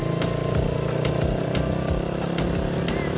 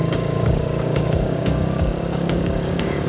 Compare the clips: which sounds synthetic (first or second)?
second